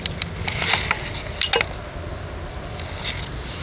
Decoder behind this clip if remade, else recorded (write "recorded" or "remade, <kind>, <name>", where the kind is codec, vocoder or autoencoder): recorded